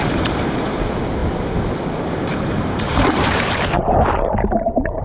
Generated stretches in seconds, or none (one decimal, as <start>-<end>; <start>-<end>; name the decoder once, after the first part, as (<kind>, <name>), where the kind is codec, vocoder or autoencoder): 0.0-5.0 (vocoder, BigVGAN v2)